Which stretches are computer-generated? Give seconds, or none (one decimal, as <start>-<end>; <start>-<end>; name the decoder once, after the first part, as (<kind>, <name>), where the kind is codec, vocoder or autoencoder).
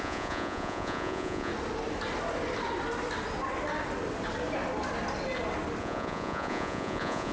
0.0-1.5 (vocoder, Vocos); 5.8-7.3